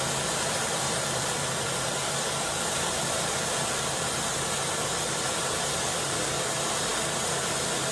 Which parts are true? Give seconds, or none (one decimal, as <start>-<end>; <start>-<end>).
6.9-7.9